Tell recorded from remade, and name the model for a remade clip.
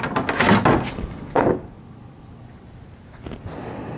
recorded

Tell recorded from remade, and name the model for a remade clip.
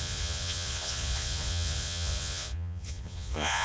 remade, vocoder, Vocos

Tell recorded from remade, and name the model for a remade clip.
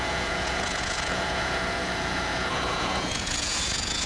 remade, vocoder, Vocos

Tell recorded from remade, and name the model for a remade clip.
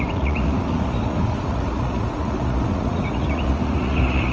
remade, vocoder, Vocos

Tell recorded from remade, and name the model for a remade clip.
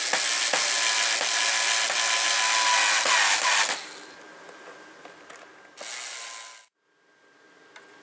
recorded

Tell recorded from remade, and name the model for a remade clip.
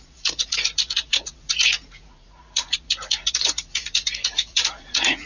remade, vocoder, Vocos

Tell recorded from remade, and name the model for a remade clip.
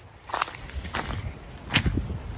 recorded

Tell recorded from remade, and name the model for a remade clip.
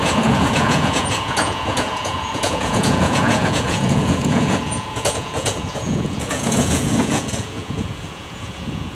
remade, vocoder, Vocos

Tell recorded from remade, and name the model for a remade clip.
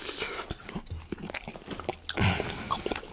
recorded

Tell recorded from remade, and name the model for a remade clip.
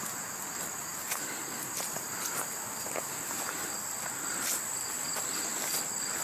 recorded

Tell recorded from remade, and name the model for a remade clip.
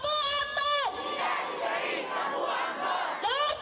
recorded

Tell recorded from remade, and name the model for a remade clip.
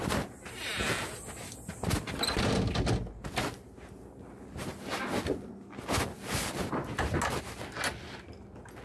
recorded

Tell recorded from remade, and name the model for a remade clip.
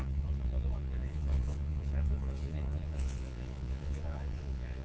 remade, vocoder, Vocos